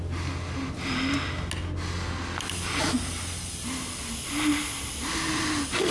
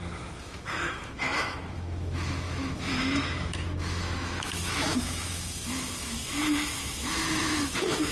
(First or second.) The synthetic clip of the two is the second